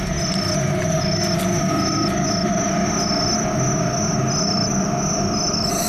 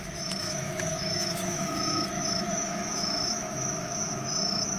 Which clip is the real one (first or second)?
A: first